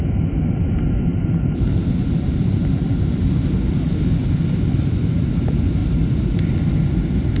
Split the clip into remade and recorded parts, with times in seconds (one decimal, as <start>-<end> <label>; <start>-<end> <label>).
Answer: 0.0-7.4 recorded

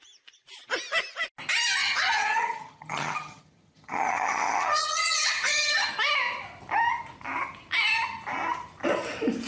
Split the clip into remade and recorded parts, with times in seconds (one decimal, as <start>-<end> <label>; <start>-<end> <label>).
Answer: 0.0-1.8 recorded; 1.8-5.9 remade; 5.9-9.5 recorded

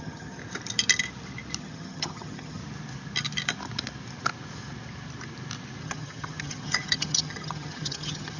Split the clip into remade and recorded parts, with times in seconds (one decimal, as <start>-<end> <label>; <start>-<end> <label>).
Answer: 0.0-0.4 remade; 0.4-1.6 recorded; 1.6-2.6 remade; 2.6-5.8 recorded; 5.8-8.4 remade

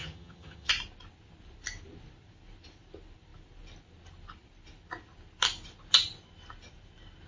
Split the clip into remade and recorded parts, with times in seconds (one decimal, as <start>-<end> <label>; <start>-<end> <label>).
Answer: 0.0-0.7 remade; 0.7-7.3 recorded

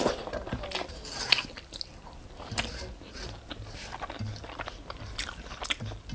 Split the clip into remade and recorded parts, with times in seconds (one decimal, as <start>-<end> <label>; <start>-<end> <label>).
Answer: 0.0-6.1 recorded